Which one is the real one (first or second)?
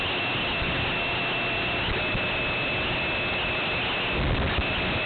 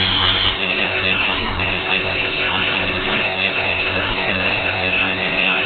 first